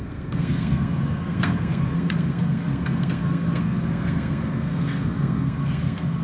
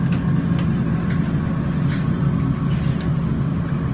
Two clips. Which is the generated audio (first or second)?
first